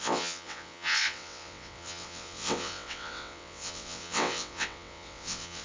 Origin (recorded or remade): remade